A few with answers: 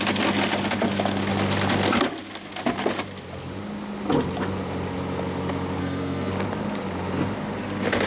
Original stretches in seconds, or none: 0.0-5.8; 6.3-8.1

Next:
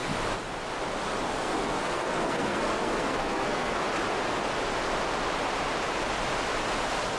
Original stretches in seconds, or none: 0.0-1.3; 3.8-7.2

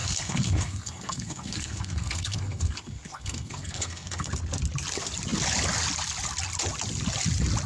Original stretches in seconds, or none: 4.3-7.7

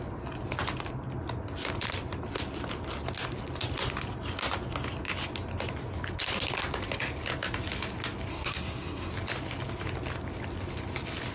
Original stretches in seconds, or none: 0.0-8.3; 9.1-11.3

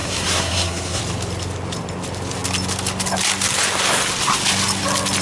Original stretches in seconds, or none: 1.0-5.2

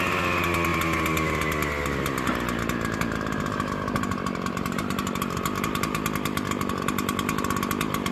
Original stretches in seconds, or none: 0.0-8.1

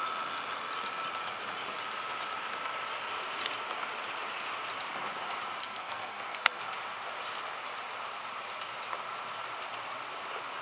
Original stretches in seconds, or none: 0.0-5.6; 6.6-10.6